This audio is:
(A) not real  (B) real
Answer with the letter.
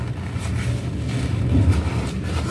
B